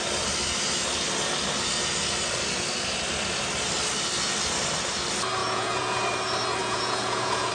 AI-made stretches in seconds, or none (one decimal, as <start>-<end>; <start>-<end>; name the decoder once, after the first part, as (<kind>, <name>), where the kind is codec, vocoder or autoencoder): 5.4-6.0 (vocoder, Vocos); 6.6-7.5